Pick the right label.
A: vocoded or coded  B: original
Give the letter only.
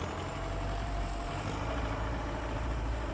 A